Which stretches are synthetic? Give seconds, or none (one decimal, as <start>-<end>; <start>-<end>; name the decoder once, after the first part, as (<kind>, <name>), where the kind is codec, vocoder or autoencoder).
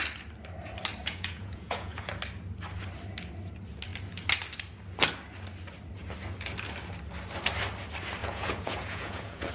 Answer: 1.0-2.1 (vocoder, Vocos); 8.2-9.5